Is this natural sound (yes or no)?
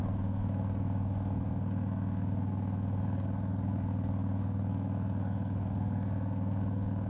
no